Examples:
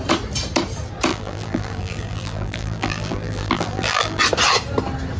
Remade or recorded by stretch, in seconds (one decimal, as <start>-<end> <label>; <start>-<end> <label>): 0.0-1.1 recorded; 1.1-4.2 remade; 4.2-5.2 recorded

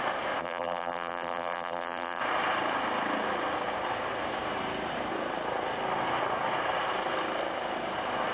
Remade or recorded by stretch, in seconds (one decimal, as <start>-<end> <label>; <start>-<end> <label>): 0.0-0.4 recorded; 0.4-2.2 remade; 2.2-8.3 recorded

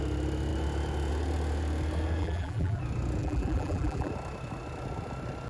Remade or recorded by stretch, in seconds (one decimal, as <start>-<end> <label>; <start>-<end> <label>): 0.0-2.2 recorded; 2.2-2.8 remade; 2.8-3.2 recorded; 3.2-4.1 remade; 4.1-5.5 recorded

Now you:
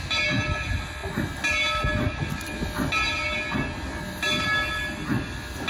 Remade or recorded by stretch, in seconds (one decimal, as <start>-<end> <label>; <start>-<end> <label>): 0.0-5.7 recorded